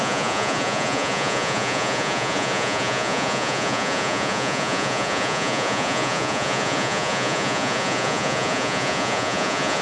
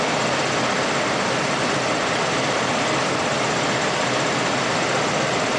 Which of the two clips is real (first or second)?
second